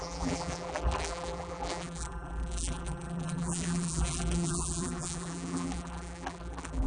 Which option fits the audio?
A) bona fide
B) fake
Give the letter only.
B